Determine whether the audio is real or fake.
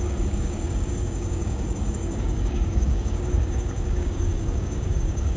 fake